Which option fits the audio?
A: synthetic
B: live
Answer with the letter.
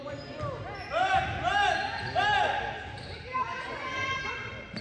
B